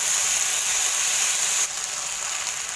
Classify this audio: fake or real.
real